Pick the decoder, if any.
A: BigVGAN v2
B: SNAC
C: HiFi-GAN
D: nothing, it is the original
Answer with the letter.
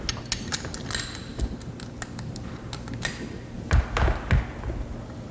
D